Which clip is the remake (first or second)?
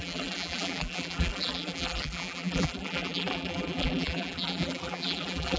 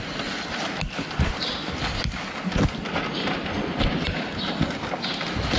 first